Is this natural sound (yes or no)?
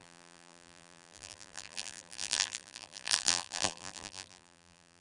no